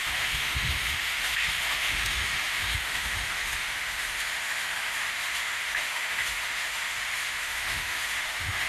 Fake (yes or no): yes